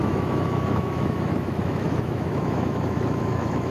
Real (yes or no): no